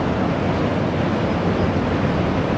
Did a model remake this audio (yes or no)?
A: no